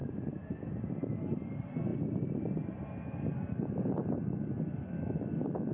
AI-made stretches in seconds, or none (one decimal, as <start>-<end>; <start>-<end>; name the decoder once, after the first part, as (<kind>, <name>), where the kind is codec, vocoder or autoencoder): none